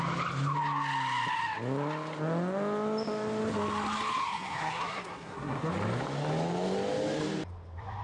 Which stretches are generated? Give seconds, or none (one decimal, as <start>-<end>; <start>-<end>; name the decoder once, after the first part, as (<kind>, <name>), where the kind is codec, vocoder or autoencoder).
4.2-5.7 (codec, SNAC)